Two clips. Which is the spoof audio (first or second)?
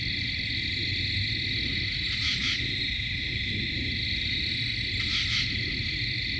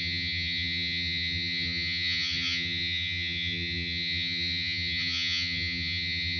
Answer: second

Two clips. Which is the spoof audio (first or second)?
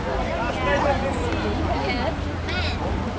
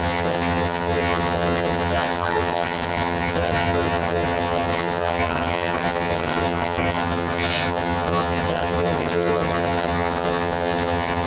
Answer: second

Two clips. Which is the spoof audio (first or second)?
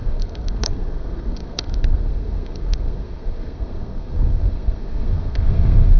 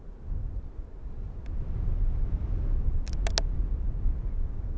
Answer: first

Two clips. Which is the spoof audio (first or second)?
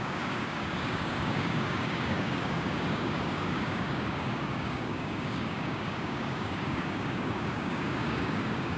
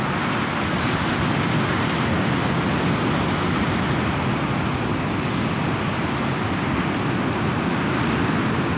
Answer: first